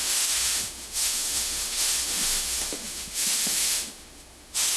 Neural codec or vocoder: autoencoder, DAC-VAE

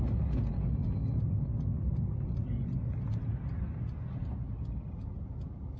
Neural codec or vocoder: none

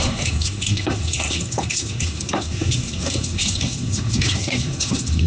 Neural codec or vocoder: codec, SNAC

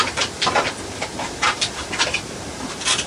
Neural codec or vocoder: none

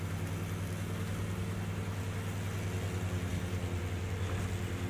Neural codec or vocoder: none